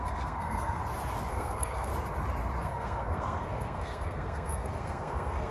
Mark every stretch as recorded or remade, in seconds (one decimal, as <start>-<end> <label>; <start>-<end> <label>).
0.0-0.8 remade; 0.8-1.3 recorded; 1.3-1.9 remade; 1.9-2.6 recorded; 2.6-5.5 remade